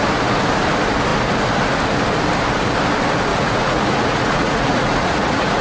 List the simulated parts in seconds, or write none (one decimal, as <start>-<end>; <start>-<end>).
3.3-5.6